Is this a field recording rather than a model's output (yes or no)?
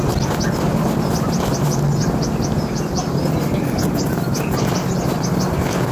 yes